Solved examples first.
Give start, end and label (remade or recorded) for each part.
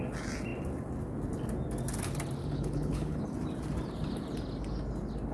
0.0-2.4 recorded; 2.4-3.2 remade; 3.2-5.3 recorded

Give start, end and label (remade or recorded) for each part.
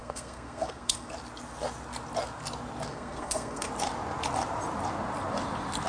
0.0-1.1 remade; 1.1-2.9 recorded; 2.9-3.7 remade; 3.7-5.9 recorded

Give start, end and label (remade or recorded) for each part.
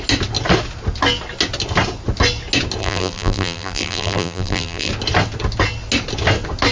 0.0-2.8 recorded; 2.8-4.9 remade; 4.9-6.7 recorded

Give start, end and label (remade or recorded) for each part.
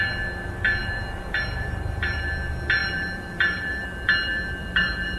0.0-0.8 recorded; 0.8-2.2 remade; 2.2-2.8 recorded; 2.8-4.1 remade; 4.1-4.6 recorded; 4.6-5.2 remade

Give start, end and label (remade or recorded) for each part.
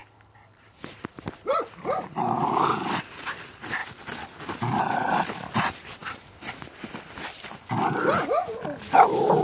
0.0-3.0 remade; 3.0-9.4 recorded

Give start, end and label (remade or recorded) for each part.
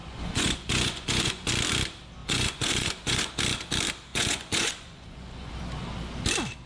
0.0-1.5 remade; 1.5-2.2 recorded; 2.2-3.3 remade; 3.3-4.1 recorded; 4.1-5.5 remade; 5.5-6.7 recorded